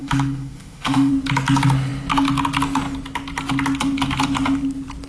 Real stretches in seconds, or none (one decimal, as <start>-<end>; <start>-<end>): 1.1-5.1